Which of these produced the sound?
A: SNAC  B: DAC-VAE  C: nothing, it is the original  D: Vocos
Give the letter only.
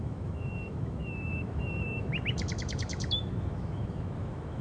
B